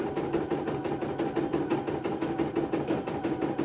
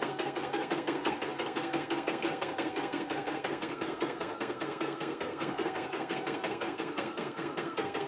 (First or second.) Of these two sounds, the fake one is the second